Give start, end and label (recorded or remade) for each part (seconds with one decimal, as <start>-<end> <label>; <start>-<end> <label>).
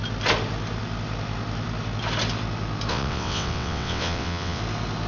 0.0-2.9 recorded; 2.9-4.6 remade; 4.6-5.1 recorded